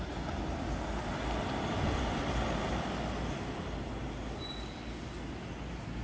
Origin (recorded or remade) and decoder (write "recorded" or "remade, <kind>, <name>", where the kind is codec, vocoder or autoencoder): recorded